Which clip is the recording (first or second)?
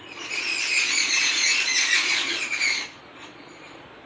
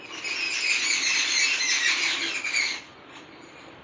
second